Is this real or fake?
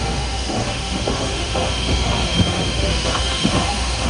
fake